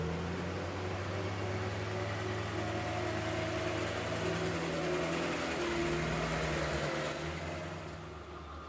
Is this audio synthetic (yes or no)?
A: no